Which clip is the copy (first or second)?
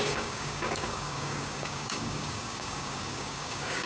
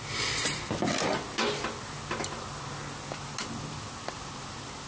first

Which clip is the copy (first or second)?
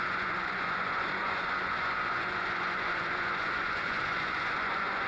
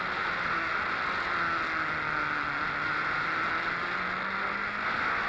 first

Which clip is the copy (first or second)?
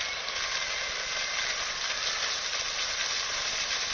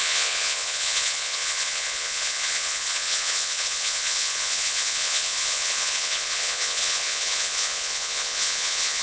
second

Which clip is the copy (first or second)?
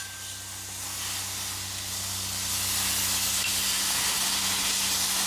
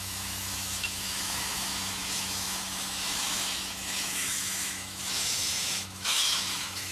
second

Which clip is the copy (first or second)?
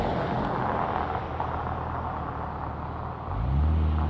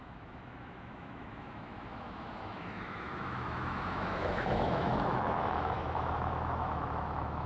second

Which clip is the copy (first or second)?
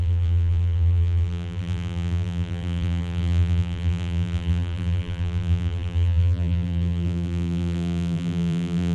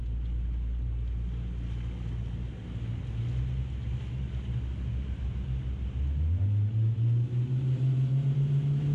first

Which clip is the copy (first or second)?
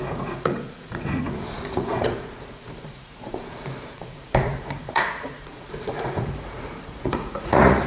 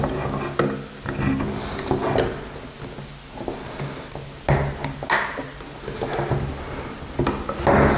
first